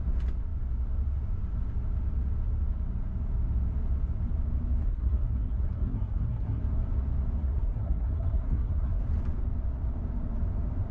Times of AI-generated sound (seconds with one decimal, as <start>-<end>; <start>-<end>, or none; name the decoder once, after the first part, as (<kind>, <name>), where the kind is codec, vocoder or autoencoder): 4.8-6.6 (codec, SNAC); 7.4-9.0